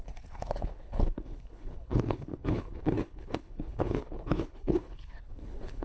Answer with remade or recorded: remade